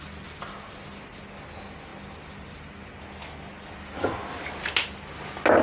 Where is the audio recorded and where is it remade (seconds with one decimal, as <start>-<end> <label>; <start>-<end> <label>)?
0.0-5.6 recorded